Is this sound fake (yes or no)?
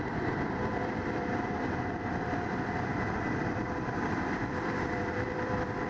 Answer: yes